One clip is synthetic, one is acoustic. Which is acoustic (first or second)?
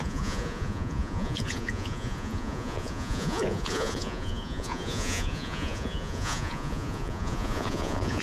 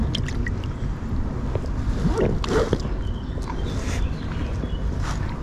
second